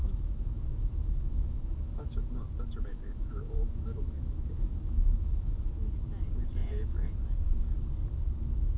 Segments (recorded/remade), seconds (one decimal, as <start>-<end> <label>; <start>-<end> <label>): 0.0-2.3 remade; 2.3-2.9 recorded; 2.9-5.7 remade; 5.7-6.6 recorded; 6.6-7.2 remade; 7.2-8.8 recorded